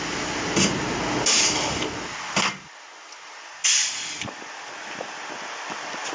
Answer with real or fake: real